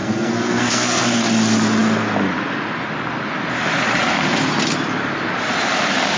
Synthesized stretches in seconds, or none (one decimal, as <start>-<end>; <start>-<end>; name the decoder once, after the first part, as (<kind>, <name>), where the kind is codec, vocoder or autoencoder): 0.0-1.0 (codec, SNAC)